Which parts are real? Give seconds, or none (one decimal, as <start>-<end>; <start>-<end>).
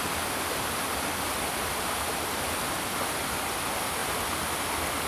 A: 0.0-5.1